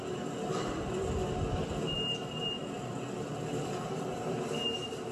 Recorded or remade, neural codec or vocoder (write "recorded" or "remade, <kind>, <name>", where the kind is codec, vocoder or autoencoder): remade, vocoder, BigVGAN v2